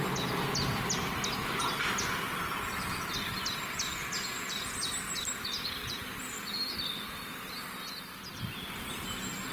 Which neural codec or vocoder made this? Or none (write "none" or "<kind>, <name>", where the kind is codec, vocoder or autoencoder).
none